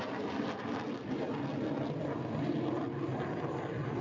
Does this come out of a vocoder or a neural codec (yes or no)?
no